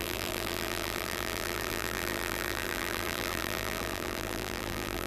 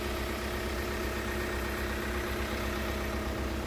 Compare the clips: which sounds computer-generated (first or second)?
first